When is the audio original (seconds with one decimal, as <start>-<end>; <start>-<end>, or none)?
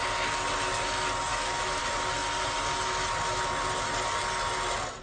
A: 0.0-1.3; 1.8-5.0